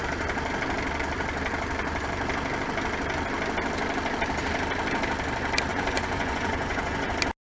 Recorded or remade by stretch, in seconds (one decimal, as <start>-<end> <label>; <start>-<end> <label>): 0.0-5.7 recorded; 5.7-7.1 remade; 7.1-7.5 recorded